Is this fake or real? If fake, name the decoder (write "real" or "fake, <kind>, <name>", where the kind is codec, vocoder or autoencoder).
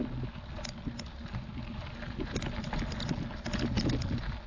real